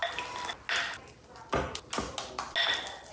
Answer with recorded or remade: recorded